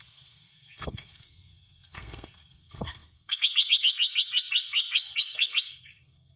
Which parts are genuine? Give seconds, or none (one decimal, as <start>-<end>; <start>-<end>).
none

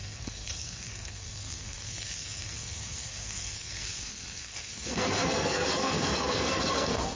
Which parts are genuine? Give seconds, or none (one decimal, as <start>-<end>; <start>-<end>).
none

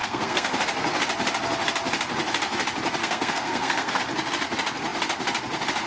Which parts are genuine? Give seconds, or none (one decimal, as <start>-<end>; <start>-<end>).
0.5-3.0; 4.0-5.9

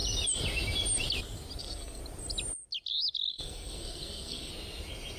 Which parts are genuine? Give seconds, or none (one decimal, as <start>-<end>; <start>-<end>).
0.0-1.6; 2.0-3.3; 4.5-5.2